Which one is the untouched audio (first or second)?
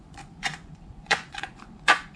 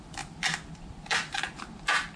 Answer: second